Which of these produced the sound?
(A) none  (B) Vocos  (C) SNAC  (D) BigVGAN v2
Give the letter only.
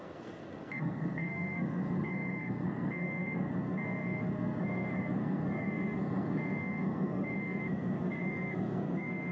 C